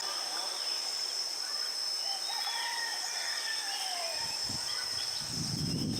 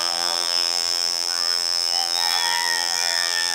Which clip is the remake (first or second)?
second